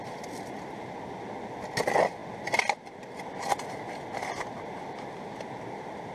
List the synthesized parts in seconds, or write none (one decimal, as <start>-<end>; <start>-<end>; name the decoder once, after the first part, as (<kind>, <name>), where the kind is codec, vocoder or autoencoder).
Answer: none